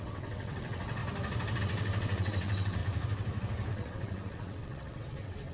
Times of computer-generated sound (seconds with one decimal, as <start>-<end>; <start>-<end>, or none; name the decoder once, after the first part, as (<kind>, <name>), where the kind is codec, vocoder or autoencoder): 0.0-1.0 (vocoder, WaveNeXt); 1.6-2.8; 3.7-5.5

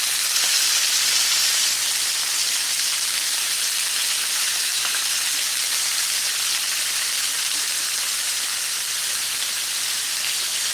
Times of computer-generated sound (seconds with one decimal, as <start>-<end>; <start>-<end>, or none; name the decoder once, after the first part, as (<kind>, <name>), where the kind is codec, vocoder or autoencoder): 4.4-5.0 (autoencoder, DAC-VAE)

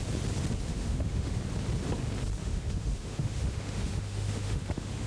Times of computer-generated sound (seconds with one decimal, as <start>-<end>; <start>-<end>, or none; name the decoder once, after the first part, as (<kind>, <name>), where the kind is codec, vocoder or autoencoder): 0.7-1.4 (autoencoder, DAC-VAE); 2.4-5.1

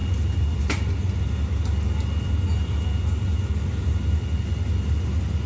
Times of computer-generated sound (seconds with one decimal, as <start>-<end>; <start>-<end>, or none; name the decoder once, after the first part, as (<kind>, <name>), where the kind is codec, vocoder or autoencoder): none

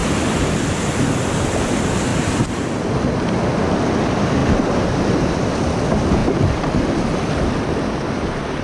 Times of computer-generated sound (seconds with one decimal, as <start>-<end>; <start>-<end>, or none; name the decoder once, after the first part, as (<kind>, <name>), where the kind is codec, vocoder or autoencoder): 2.1-2.8 (vocoder, BigVGAN v2); 4.4-5.4